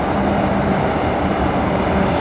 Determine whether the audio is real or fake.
real